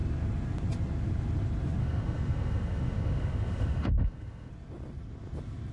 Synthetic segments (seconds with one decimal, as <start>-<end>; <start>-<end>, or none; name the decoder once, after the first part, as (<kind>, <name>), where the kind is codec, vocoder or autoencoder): 1.8-4.5 (autoencoder, DAC-VAE)